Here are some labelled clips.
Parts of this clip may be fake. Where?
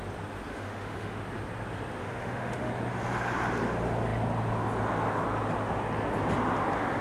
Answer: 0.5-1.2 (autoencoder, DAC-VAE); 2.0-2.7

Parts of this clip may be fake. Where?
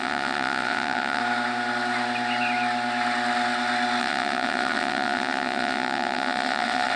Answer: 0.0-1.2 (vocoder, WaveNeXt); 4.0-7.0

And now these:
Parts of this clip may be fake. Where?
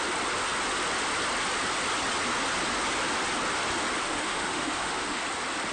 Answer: 4.0-5.2 (autoencoder, DAC-VAE)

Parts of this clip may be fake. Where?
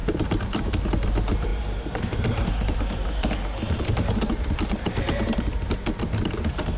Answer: 0.0-0.7 (vocoder, BigVGAN v2); 1.5-5.6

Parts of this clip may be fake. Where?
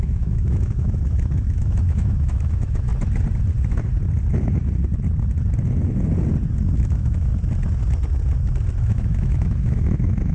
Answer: 0.0-2.9 (autoencoder, DAC-VAE); 6.8-7.3; 8.8-10.3